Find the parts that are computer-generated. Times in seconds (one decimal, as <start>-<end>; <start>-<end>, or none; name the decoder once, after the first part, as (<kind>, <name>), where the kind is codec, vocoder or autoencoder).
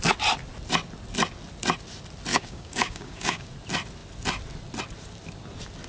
2.3-3.5 (codec, DAC)